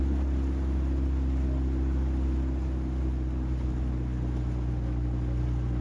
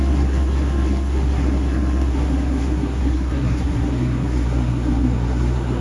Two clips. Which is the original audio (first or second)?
first